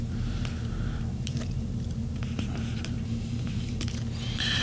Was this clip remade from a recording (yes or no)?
yes